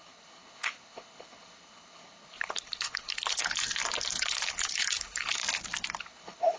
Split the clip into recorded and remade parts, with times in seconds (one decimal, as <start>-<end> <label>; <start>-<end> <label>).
0.0-3.4 remade; 3.4-4.2 recorded; 4.2-5.4 remade; 5.4-6.0 recorded; 6.0-6.6 remade